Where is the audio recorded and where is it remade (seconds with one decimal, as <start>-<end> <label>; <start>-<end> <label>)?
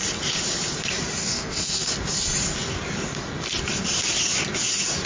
0.0-1.2 recorded; 1.2-1.9 remade; 1.9-5.1 recorded